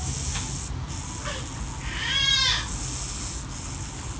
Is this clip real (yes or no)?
yes